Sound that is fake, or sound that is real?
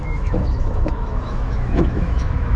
fake